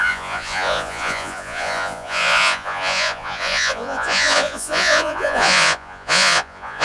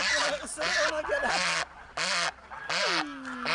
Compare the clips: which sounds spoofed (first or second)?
first